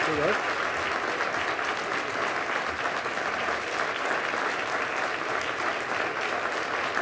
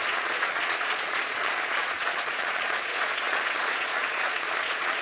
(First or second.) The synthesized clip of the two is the second